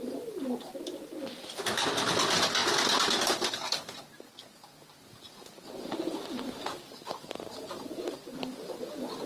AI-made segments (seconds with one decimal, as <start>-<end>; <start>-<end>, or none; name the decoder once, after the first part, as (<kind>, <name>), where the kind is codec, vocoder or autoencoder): none